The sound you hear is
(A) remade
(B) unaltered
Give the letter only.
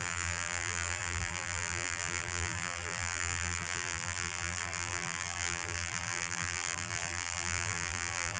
A